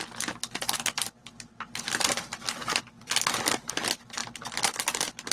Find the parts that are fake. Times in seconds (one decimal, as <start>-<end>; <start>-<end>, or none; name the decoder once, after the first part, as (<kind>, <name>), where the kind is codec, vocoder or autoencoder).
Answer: 1.2-2.2 (vocoder, BigVGAN v2); 2.6-3.7; 4.2-4.8